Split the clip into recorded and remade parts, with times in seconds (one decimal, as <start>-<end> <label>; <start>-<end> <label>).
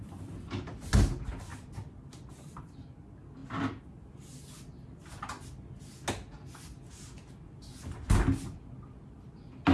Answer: 0.0-9.7 recorded